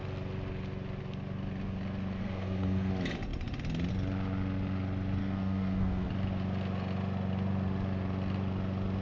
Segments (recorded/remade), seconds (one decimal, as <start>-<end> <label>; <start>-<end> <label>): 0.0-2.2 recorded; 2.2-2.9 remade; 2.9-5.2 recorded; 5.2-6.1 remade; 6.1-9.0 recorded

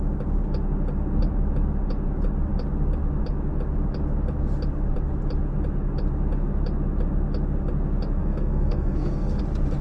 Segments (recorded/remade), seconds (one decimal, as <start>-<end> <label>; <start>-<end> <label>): 0.0-8.2 recorded; 8.2-9.4 remade; 9.4-9.8 recorded

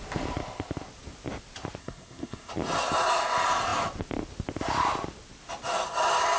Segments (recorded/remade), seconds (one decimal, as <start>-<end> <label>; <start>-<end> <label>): 0.0-1.8 recorded; 1.8-2.5 remade; 2.5-6.4 recorded

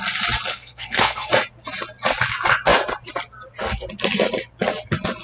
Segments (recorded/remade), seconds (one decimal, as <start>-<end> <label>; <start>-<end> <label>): 0.0-0.5 recorded; 0.5-1.3 remade; 1.3-5.2 recorded